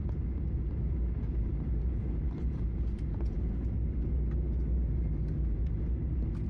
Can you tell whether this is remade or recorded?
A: recorded